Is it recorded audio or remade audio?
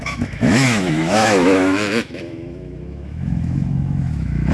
remade